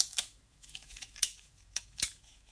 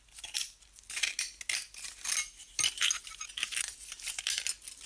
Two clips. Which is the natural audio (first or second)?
second